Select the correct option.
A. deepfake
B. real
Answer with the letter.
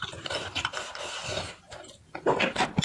B